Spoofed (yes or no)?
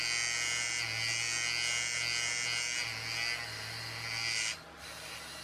no